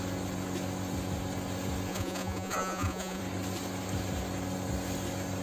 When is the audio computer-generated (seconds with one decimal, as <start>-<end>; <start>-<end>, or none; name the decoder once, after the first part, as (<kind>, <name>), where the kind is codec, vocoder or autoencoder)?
1.9-3.2 (vocoder, Vocos)